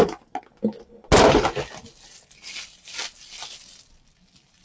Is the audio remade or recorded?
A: recorded